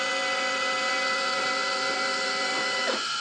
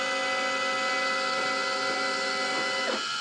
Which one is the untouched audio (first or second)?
second